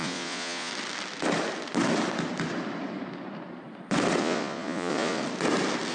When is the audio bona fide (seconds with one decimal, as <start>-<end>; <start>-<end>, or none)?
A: 0.7-4.2; 5.2-5.9